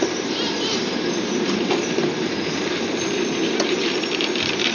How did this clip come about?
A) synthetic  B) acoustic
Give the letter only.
A